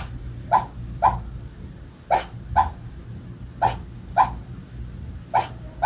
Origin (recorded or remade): recorded